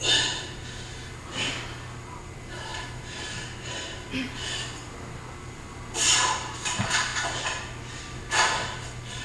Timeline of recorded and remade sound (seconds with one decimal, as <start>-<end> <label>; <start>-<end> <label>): 0.0-9.2 recorded